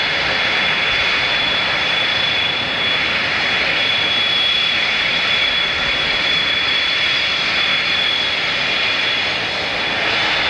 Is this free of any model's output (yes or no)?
yes